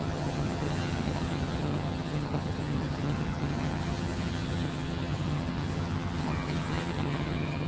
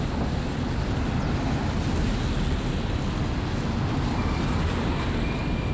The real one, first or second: second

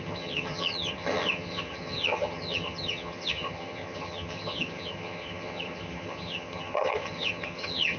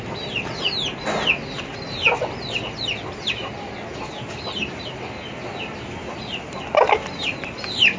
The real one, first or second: second